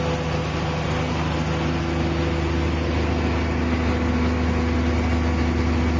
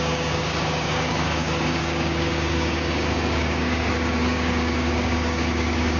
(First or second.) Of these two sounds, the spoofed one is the second